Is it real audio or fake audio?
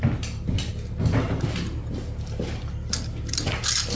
real